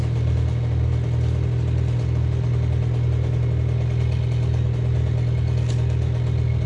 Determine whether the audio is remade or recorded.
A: recorded